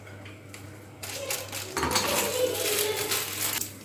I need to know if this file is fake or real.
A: real